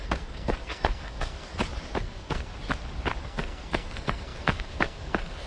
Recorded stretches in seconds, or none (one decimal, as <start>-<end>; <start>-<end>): 1.5-2.0; 2.5-3.2